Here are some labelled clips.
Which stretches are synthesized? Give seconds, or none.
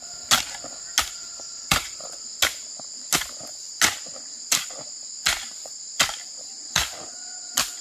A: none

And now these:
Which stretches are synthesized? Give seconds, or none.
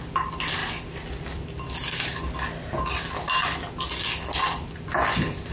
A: none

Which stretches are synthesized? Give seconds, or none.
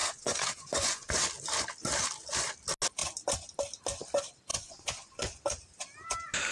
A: 0.0-1.1 (vocoder, Vocos); 4.5-5.4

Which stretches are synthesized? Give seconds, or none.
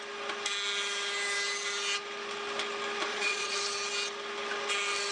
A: 3.1-3.6 (vocoder, Vocos)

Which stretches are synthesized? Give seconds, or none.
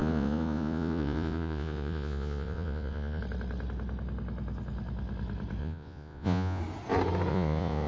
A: 0.0-3.2 (vocoder, Vocos); 5.6-6.6; 7.3-7.9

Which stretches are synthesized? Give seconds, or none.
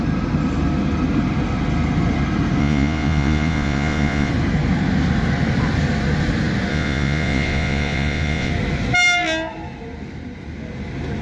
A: 2.6-4.3 (vocoder, Vocos); 6.7-8.5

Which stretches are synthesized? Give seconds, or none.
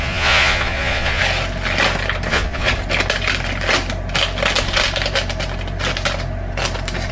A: 0.0-1.2 (vocoder, Vocos); 2.3-2.7